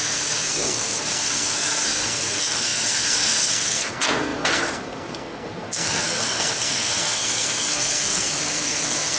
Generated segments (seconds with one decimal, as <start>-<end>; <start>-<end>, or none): 0.0-9.2